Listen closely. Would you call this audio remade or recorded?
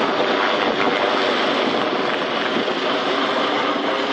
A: recorded